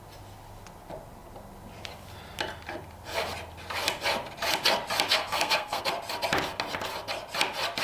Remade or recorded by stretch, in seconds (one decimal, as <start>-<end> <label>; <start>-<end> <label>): 0.0-5.1 recorded; 5.1-5.8 remade; 5.8-7.8 recorded